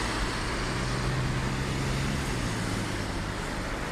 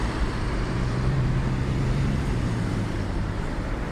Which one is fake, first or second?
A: second